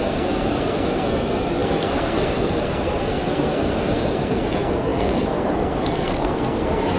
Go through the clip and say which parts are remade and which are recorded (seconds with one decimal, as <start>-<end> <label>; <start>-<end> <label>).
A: 0.0-7.0 remade